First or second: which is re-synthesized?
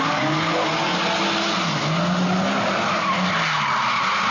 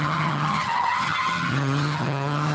second